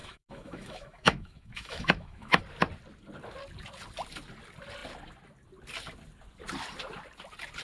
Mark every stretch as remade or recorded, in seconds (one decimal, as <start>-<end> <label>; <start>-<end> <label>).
0.0-2.4 remade; 2.4-7.6 recorded